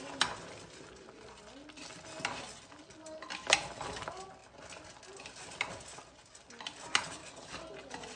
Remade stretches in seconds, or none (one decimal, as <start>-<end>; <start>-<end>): none